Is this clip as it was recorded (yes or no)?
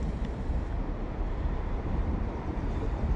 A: no